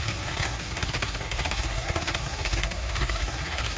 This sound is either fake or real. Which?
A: fake